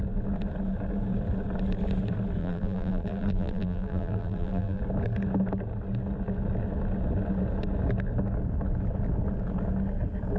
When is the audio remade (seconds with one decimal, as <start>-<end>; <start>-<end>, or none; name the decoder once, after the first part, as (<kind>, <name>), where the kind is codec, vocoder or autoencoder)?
2.4-4.8 (vocoder, BigVGAN v2)